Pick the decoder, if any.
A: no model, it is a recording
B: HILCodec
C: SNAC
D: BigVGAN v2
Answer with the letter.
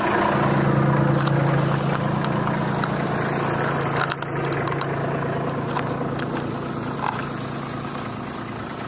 A